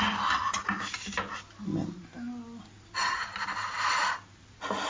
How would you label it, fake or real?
real